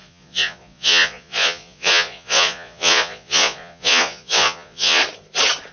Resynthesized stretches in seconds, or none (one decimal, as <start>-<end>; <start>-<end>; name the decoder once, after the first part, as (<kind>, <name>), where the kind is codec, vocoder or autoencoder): 0.0-5.0 (vocoder, Vocos)